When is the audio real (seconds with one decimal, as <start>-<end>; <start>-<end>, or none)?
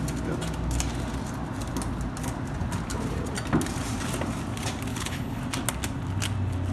0.0-4.9; 5.4-6.7